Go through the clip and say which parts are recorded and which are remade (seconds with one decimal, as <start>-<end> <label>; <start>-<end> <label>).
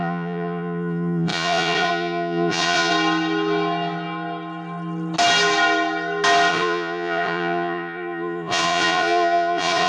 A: 0.0-2.9 remade; 2.9-6.5 recorded; 6.5-9.9 remade